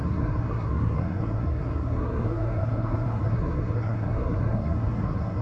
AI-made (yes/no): yes